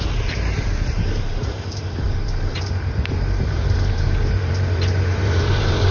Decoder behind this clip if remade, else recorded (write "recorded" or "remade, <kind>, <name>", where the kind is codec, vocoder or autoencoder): remade, vocoder, BigVGAN v2